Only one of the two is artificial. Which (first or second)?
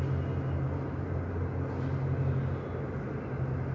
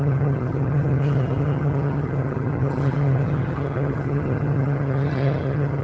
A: second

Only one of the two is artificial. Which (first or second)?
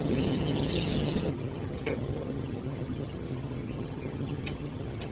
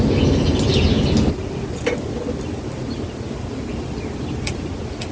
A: first